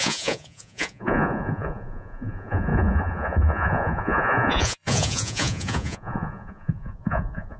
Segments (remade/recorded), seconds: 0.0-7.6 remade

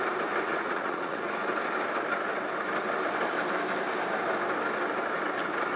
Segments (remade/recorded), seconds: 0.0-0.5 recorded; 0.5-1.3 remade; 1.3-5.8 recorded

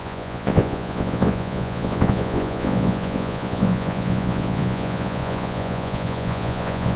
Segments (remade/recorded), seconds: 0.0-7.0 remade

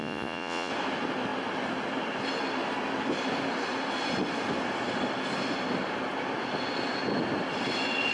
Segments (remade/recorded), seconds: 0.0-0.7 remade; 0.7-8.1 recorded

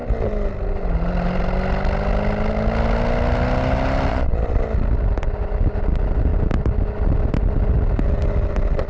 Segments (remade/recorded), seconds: 0.0-4.1 recorded; 4.1-4.6 remade; 4.6-8.9 recorded

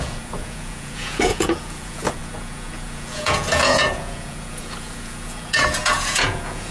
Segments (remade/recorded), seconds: 0.0-6.7 remade